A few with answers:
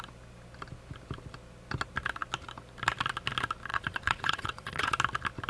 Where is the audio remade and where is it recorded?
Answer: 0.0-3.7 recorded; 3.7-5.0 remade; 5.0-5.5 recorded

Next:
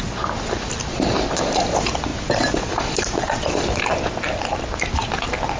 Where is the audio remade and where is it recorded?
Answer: 0.0-5.6 recorded

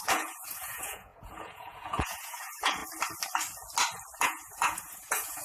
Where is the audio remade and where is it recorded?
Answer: 0.0-2.8 remade; 2.8-4.2 recorded; 4.2-5.4 remade

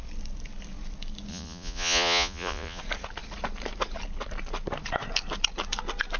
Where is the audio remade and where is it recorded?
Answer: 0.0-1.3 recorded; 1.3-2.8 remade; 2.8-6.2 recorded

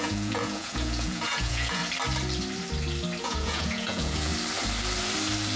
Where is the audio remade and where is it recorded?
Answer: 0.0-1.8 remade; 1.8-3.2 recorded; 3.2-4.3 remade; 4.3-5.6 recorded

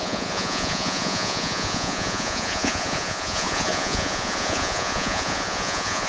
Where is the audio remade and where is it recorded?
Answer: 0.0-6.1 remade